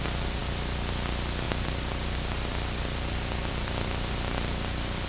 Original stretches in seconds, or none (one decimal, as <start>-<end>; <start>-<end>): 0.0-5.1